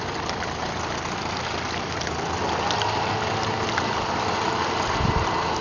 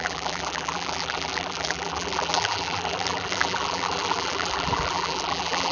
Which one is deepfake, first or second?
second